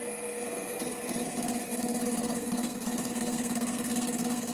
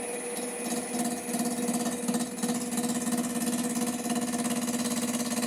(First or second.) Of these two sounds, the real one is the second